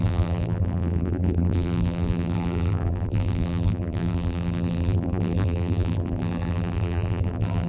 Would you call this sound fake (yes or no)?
yes